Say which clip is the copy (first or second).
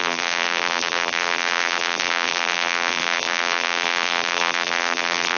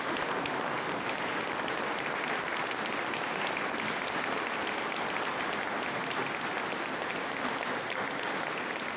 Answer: first